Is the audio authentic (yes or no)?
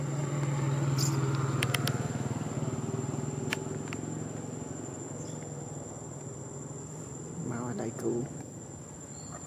yes